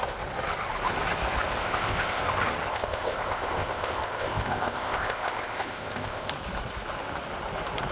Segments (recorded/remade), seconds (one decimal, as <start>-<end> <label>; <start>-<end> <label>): 0.0-1.6 recorded; 1.6-2.2 remade; 2.2-2.7 recorded; 2.7-6.3 remade; 6.3-7.9 recorded